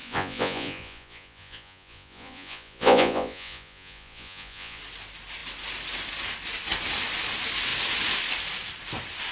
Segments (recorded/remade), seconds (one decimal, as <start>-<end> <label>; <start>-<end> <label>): 0.0-4.8 remade; 4.8-9.3 recorded